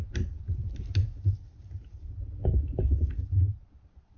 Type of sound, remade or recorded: recorded